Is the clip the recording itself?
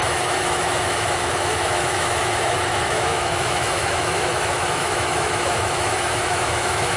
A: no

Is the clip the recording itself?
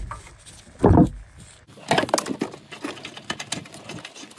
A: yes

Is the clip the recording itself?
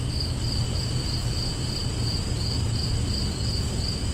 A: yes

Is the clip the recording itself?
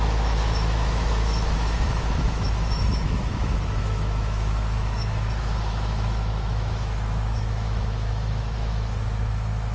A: no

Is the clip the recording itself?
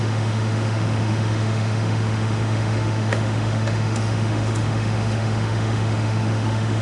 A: no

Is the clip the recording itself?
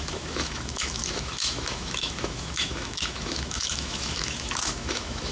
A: no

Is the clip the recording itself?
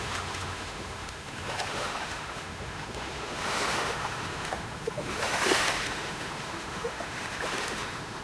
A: no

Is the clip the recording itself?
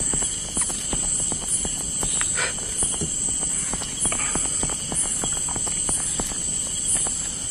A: yes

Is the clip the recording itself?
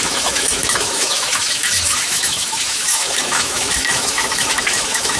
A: no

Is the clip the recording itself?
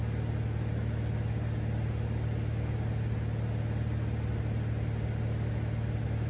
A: yes